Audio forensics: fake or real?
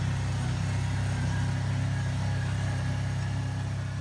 real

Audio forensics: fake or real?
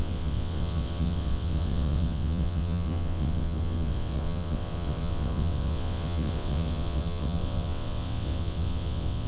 fake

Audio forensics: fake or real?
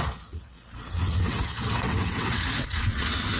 fake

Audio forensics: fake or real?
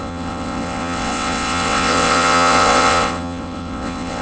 fake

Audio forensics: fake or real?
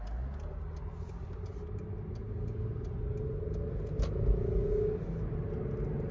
real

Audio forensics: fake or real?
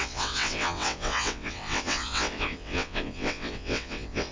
fake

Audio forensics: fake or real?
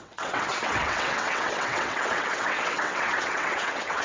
fake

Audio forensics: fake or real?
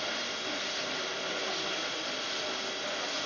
real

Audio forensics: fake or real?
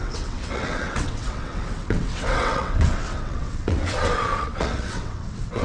fake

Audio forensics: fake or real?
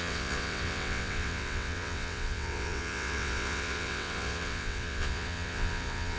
fake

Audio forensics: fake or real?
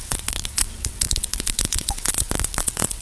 fake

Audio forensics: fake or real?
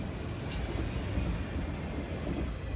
real